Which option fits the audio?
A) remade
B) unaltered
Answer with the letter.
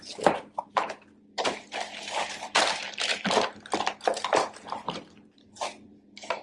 A